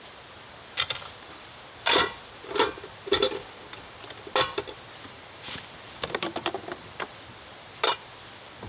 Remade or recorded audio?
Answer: remade